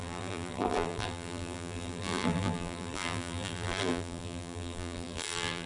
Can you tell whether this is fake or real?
fake